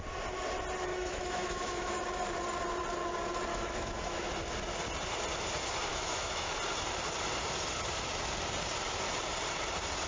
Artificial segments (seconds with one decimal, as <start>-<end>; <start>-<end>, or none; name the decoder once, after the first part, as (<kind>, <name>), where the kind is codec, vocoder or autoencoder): 0.9-2.0 (autoencoder, DAC-VAE); 3.5-4.3; 5.9-6.5